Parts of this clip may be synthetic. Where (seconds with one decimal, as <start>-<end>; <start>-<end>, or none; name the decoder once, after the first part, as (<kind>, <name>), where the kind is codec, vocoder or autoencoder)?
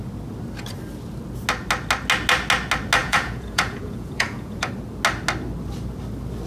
3.0-4.7 (vocoder, Vocos)